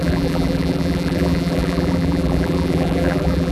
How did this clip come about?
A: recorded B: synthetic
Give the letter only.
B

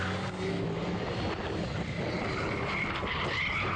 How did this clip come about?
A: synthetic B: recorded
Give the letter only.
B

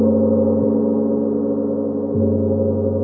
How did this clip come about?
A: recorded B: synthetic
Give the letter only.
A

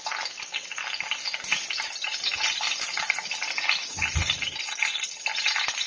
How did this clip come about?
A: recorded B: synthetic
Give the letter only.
A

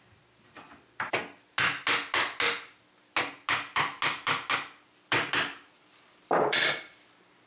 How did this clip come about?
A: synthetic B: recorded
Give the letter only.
B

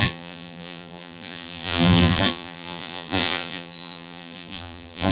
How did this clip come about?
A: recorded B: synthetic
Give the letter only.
B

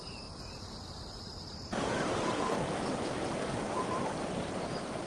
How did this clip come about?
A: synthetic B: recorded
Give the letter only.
A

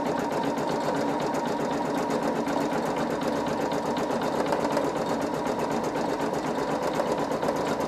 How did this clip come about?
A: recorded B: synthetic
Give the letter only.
A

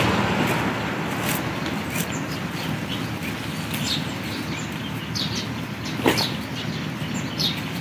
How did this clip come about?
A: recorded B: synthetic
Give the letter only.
A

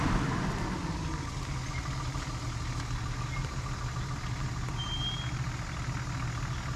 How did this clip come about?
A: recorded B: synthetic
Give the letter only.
A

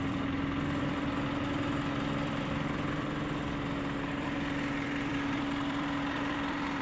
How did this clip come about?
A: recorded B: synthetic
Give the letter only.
B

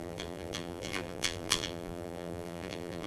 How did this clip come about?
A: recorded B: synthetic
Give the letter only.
B